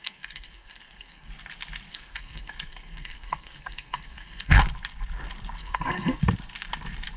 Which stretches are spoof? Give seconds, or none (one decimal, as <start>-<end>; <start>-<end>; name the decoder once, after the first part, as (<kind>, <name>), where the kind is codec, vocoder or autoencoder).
0.0-1.3 (codec, SNAC); 1.9-4.6; 5.6-6.2